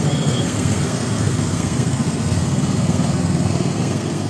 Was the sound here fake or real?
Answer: fake